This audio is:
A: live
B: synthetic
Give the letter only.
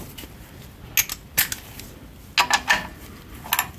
A